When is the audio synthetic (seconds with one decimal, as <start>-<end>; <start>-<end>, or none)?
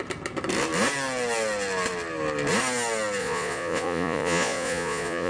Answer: 3.2-5.3